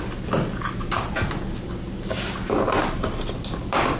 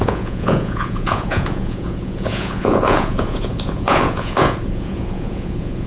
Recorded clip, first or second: first